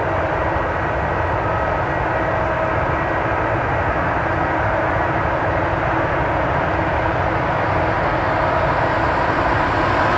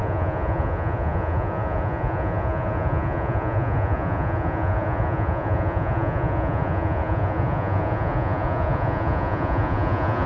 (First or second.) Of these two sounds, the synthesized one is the second